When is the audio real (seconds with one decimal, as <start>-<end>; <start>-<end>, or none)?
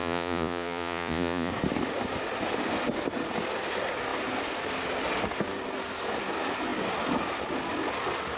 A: 1.5-8.4